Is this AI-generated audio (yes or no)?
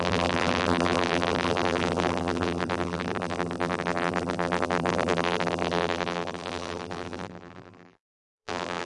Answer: yes